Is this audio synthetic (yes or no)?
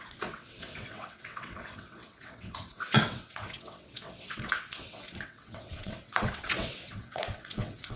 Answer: yes